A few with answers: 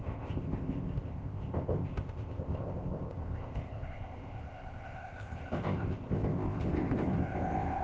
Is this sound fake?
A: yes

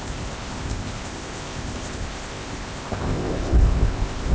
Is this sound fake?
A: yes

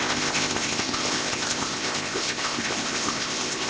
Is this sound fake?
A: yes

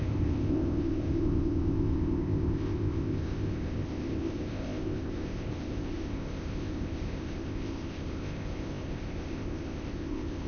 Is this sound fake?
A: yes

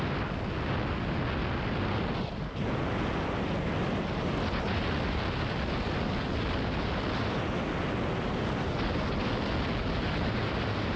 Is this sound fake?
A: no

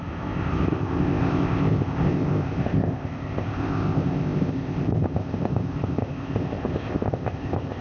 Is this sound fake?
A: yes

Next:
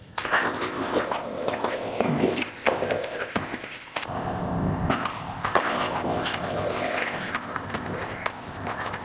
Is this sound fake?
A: yes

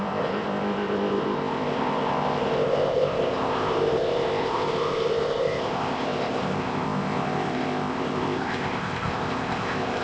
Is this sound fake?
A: yes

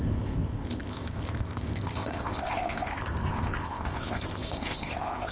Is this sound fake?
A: yes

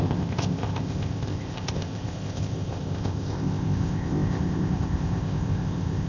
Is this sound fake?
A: yes